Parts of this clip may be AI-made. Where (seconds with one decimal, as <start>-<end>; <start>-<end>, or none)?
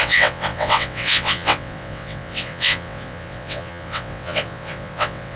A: 0.0-5.4